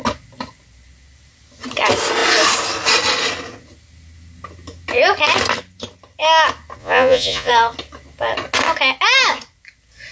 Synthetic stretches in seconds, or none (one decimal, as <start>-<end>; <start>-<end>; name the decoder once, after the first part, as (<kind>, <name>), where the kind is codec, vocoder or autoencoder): 6.8-7.5 (vocoder, Vocos)